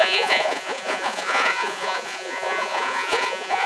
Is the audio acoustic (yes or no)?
no